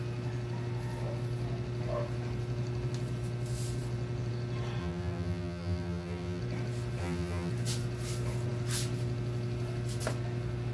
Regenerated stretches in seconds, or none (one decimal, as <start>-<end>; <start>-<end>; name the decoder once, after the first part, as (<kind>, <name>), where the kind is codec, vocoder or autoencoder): 4.8-6.4 (vocoder, BigVGAN v2); 7.0-7.5